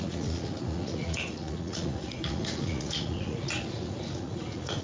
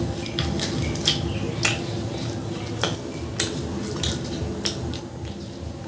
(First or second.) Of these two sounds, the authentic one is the second